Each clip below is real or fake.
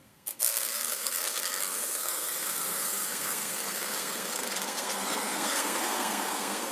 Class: fake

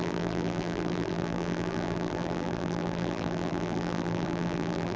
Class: fake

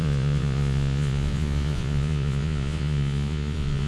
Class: fake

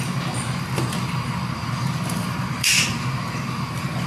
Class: real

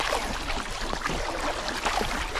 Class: real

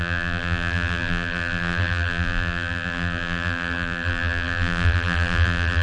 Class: fake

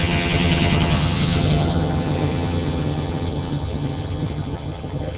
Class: fake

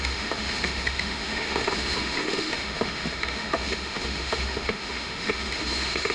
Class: fake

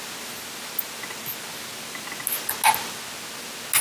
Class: real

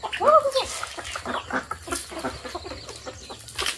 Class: real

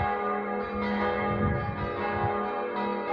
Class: real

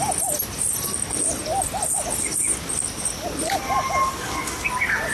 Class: real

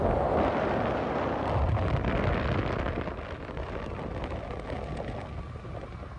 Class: real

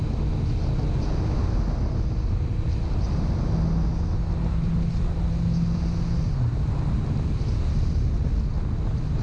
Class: real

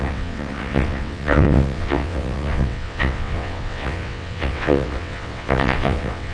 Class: fake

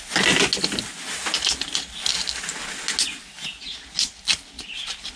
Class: real